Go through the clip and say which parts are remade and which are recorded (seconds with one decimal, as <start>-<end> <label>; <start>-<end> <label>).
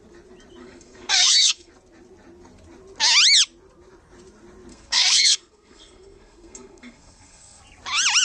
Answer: 0.0-0.6 recorded; 0.6-1.7 remade; 1.7-4.7 recorded; 4.7-7.6 remade; 7.6-8.2 recorded